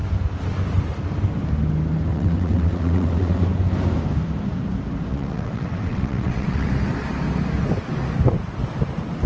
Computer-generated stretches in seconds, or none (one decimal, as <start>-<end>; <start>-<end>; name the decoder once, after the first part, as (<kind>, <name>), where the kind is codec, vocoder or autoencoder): 2.1-3.5 (vocoder, WaveNeXt); 5.1-6.7